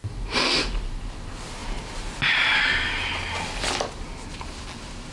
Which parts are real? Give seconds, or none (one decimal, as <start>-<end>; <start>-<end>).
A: 0.0-5.1